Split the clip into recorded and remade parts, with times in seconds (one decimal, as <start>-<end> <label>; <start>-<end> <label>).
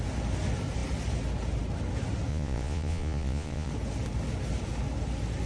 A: 0.0-2.3 recorded; 2.3-3.7 remade; 3.7-5.5 recorded